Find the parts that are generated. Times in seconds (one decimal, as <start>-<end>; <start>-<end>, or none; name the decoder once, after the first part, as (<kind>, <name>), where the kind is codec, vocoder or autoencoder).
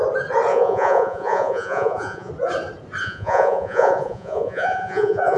0.5-2.3 (vocoder, Vocos); 3.0-5.4